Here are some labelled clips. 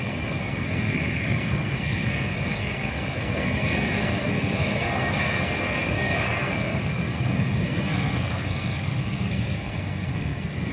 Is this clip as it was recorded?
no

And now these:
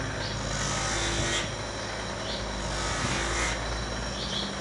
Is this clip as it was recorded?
yes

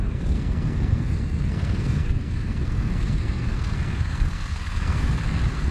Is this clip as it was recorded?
no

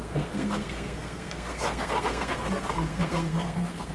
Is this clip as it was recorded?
no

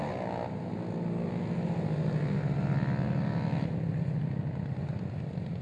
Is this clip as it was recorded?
yes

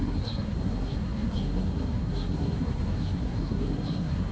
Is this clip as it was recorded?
no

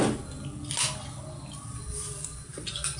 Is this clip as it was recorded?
yes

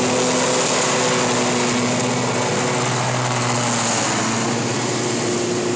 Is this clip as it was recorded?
yes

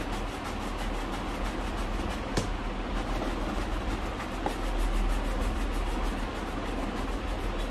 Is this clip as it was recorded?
yes